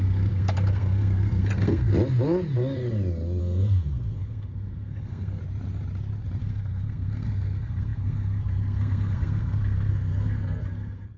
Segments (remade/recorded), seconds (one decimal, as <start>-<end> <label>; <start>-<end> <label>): 0.0-1.9 remade; 1.9-3.4 recorded; 3.4-5.4 remade; 5.4-6.4 recorded; 6.4-11.2 remade